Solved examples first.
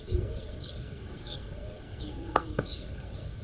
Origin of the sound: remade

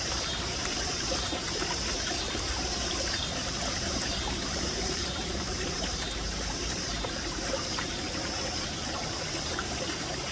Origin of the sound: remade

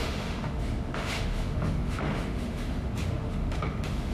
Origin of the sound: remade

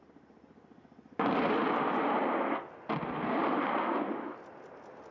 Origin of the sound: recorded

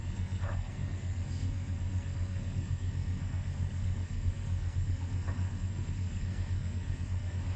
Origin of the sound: remade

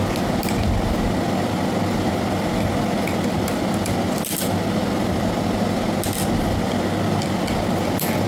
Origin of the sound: recorded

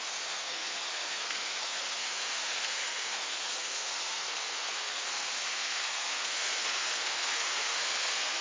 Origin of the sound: remade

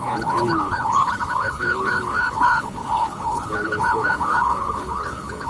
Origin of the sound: remade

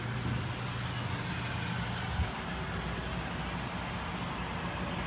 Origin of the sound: recorded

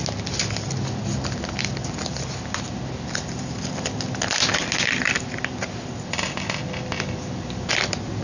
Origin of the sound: recorded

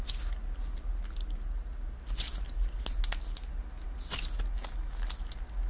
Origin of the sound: recorded